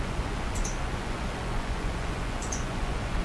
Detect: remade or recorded remade